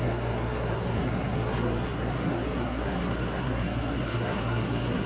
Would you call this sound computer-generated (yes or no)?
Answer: yes